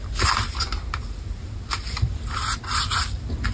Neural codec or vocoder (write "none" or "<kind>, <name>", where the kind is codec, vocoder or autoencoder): vocoder, BigVGAN v2